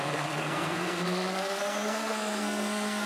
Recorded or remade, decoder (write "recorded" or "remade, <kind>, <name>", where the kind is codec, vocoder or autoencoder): remade, codec, SNAC